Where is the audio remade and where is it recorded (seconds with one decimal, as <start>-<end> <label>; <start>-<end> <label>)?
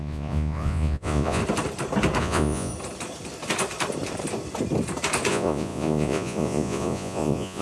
0.0-1.4 remade; 1.4-2.2 recorded; 2.2-2.7 remade; 2.7-5.3 recorded; 5.3-7.6 remade